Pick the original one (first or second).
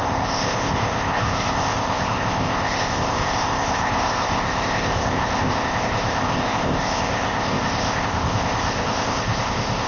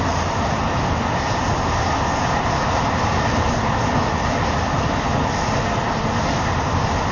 second